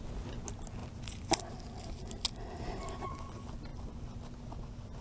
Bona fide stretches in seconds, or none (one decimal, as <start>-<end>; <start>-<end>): 0.0-5.0